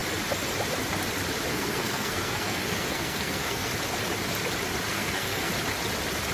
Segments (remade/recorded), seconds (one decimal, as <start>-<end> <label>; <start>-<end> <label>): 0.0-1.5 recorded; 1.5-3.7 remade; 3.7-4.9 recorded; 4.9-5.5 remade; 5.5-6.3 recorded